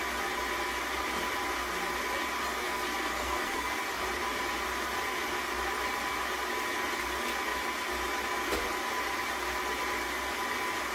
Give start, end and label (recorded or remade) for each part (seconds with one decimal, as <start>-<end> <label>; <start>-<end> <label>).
0.0-2.6 recorded; 2.6-3.8 remade; 3.8-10.9 recorded